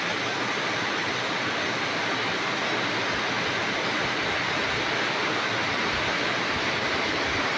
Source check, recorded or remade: recorded